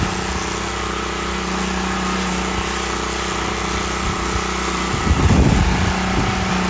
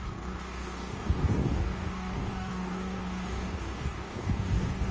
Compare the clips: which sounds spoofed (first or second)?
second